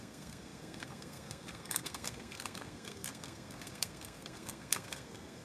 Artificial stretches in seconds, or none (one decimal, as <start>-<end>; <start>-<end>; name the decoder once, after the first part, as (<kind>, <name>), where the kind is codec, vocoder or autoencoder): 0.0-5.4 (codec, SNAC)